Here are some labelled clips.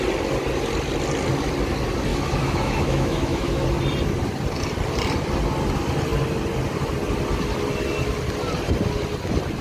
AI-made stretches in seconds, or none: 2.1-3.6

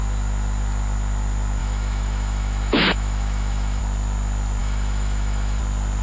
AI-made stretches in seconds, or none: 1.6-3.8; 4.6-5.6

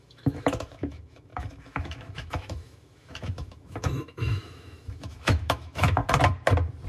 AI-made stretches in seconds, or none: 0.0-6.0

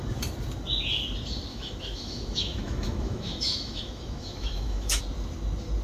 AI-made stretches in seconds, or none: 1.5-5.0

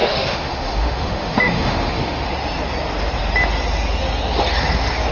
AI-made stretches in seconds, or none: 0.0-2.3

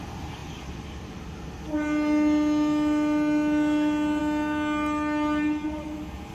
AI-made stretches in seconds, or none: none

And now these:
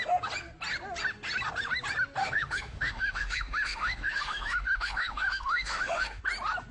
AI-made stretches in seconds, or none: 2.2-6.2

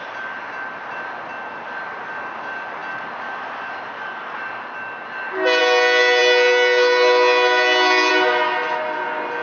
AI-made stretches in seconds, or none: none